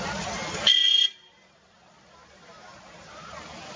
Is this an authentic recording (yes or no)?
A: yes